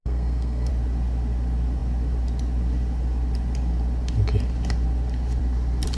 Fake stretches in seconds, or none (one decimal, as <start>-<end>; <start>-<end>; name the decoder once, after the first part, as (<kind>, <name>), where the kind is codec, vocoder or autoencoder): 0.0-0.7 (codec, SNAC)